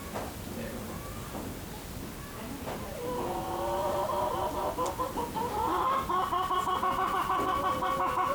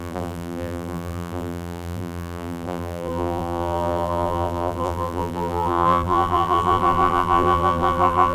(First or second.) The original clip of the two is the first